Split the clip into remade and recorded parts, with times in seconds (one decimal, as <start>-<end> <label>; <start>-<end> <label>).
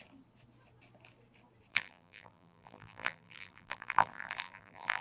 0.0-1.7 recorded; 1.7-5.0 remade